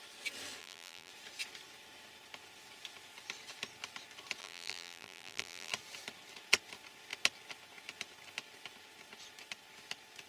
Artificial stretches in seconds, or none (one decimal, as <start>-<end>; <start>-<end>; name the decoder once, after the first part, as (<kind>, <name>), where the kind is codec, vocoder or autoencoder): 0.6-1.1 (vocoder, BigVGAN v2); 4.4-5.7